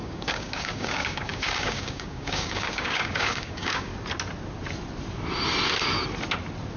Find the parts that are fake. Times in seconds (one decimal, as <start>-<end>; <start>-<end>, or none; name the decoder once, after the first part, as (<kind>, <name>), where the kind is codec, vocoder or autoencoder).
0.0-3.9 (codec, DAC)